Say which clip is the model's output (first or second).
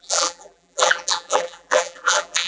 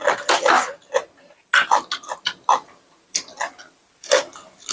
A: first